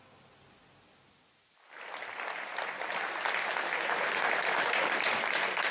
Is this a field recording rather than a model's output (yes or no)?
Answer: yes